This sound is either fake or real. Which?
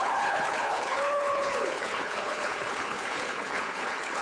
fake